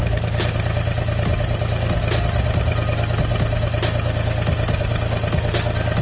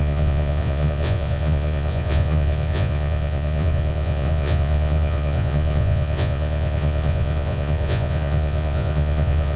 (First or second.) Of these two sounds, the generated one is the second